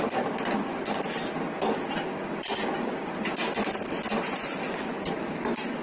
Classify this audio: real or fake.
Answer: real